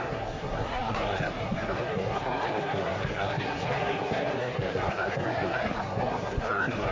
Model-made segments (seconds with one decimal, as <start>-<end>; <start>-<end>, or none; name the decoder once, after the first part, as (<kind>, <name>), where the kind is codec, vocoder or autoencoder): 0.0-6.9 (codec, SNAC)